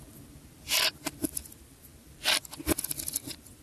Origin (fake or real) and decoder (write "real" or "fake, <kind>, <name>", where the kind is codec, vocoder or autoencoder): real